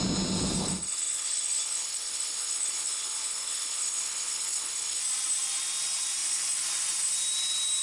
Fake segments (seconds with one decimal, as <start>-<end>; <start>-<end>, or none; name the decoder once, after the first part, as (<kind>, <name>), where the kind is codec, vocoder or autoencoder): 0.6-5.0 (codec, HILCodec)